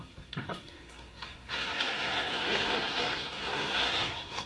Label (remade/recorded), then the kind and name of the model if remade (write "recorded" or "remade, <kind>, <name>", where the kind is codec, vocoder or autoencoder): remade, codec, SNAC